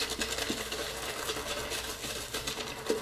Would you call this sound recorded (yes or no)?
yes